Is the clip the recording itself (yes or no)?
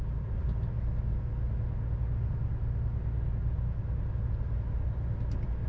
yes